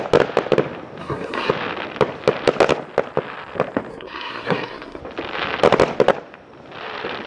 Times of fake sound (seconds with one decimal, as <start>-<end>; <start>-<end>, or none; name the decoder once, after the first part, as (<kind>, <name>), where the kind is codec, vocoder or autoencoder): 1.0-1.5 (codec, SNAC); 3.9-5.0